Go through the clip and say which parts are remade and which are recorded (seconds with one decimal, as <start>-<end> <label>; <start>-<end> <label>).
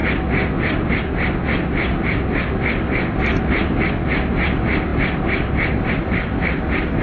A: 0.0-7.0 recorded